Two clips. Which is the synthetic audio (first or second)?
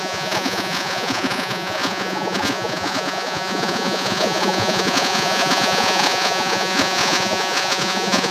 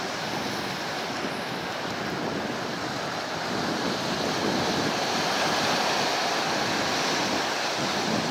first